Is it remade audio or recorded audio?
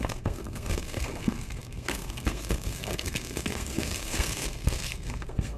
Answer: remade